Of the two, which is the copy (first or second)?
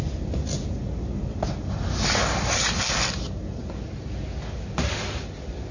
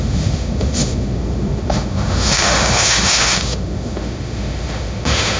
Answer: second